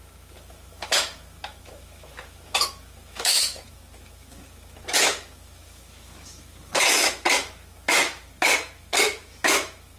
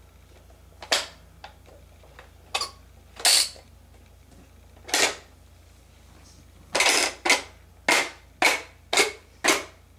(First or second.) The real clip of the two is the second